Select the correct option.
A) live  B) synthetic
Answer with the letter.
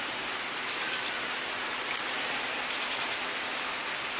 A